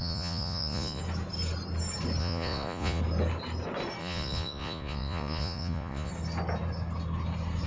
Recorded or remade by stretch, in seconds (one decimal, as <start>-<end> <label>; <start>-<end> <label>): 0.0-1.0 remade; 1.0-2.2 recorded; 2.2-3.0 remade; 3.0-4.0 recorded; 4.0-6.1 remade; 6.1-7.7 recorded